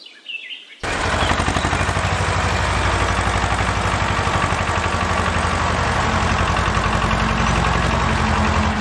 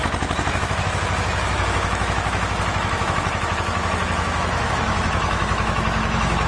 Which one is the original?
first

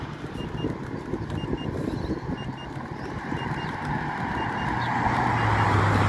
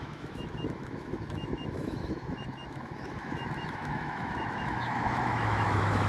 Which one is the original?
first